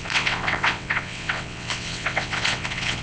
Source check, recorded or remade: remade